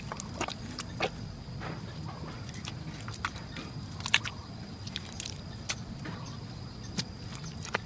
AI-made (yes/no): no